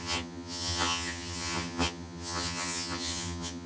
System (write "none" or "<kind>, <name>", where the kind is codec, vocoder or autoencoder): vocoder, HiFi-GAN